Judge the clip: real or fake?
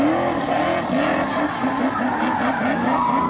real